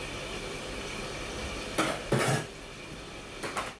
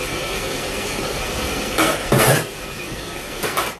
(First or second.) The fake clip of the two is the second